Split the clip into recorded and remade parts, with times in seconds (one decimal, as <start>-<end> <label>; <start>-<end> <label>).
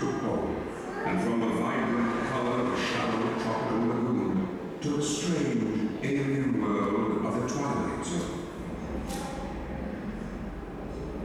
0.0-6.7 recorded; 6.7-7.3 remade; 7.3-11.2 recorded